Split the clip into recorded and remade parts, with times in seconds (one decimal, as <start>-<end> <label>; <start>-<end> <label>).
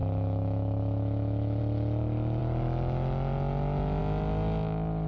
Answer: 0.0-1.6 remade; 1.6-5.1 recorded